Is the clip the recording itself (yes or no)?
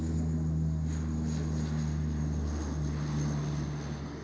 yes